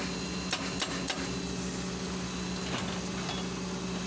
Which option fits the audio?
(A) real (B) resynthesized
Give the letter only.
A